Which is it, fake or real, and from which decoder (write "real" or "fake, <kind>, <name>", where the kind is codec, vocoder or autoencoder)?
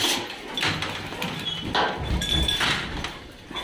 real